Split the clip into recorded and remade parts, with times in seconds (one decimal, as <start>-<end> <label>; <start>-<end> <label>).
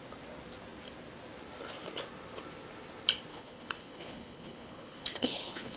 0.0-3.3 recorded; 3.3-5.8 remade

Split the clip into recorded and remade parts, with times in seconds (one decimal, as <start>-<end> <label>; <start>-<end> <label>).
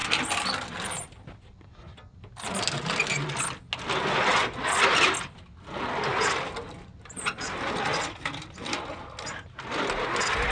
0.0-10.5 recorded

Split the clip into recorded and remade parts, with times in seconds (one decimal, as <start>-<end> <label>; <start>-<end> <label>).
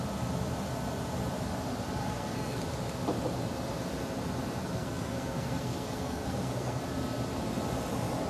0.0-2.0 recorded; 2.0-2.6 remade; 2.6-4.6 recorded; 4.6-6.8 remade; 6.8-8.3 recorded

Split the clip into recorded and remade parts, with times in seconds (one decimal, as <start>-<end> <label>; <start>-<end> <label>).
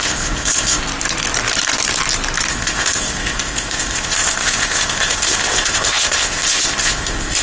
0.0-0.8 remade; 0.8-2.5 recorded; 2.5-7.4 remade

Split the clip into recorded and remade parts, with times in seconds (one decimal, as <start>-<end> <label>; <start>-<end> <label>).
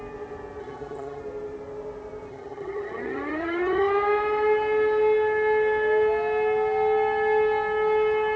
0.0-0.6 recorded; 0.6-1.2 remade; 1.2-2.3 recorded; 2.3-3.9 remade; 3.9-8.4 recorded